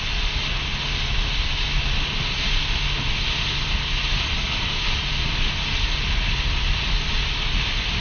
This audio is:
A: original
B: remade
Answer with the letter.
A